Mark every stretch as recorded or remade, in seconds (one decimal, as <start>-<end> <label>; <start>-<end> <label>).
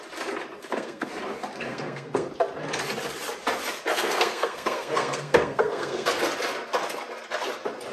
0.0-0.6 recorded; 0.6-1.1 remade; 1.1-1.7 recorded; 1.7-2.3 remade; 2.3-3.9 recorded; 3.9-6.2 remade; 6.2-7.9 recorded